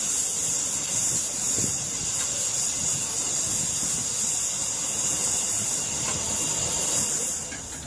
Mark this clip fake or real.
real